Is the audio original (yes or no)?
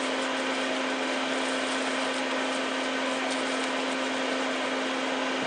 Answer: yes